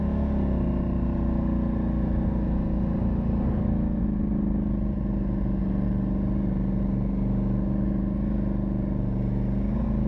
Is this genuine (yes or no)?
yes